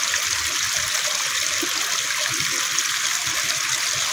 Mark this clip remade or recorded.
recorded